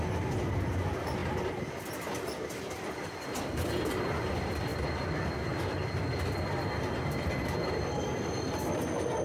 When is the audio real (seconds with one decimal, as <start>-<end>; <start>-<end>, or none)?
0.0-9.2